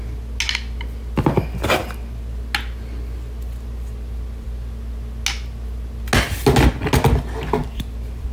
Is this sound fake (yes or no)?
no